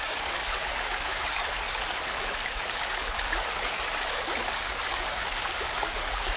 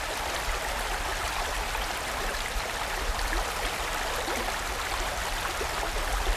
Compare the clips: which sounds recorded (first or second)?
second